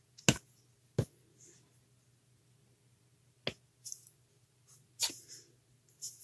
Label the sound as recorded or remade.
recorded